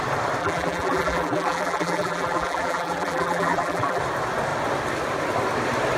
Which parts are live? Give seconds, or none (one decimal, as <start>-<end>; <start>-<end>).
0.0-0.4; 4.0-6.0